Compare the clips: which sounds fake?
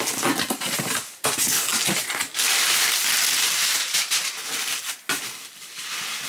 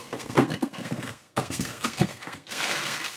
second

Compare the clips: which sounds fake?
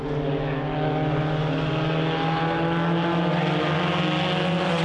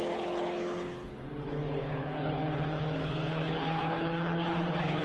second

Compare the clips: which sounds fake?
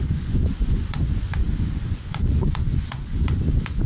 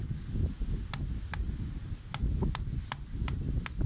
first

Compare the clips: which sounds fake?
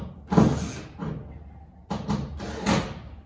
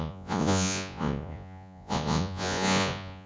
second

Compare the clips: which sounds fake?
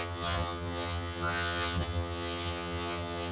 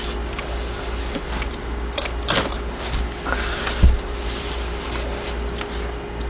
first